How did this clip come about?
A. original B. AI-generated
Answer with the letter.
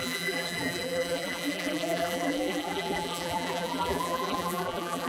B